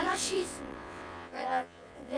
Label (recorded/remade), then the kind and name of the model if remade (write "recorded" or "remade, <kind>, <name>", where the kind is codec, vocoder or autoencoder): remade, vocoder, WaveNeXt